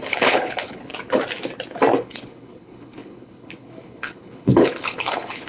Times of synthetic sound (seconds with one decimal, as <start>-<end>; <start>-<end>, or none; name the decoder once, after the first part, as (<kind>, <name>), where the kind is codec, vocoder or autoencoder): 0.0-0.9 (codec, HILCodec); 2.0-5.5